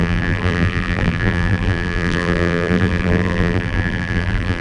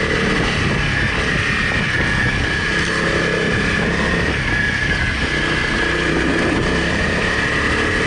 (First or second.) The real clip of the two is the second